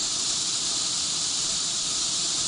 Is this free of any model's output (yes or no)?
no